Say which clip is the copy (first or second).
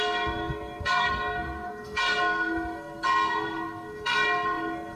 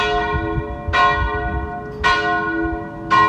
first